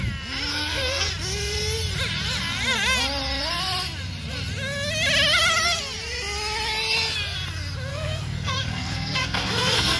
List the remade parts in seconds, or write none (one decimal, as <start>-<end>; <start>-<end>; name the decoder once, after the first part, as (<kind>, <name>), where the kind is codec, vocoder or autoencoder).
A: 0.5-1.1 (codec, SNAC); 7.9-10.0